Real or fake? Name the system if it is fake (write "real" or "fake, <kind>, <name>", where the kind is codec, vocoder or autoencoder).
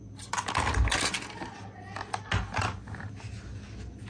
real